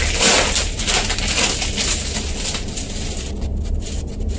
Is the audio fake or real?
real